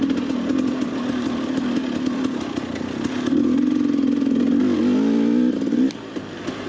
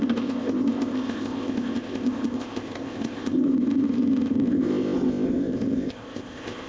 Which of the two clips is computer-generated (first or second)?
second